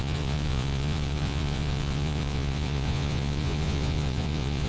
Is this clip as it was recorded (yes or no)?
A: no